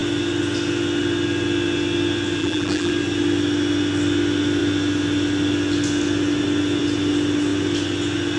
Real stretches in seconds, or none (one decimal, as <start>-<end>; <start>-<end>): 0.0-2.4; 2.9-8.4